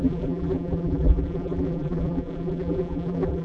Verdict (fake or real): fake